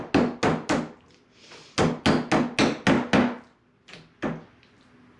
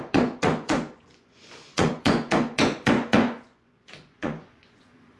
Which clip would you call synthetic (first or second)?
second